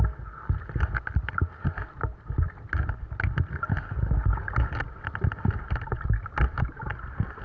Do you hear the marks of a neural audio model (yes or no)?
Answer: no